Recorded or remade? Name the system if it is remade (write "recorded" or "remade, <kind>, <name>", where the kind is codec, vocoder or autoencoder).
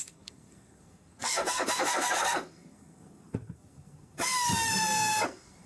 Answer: remade, codec, SNAC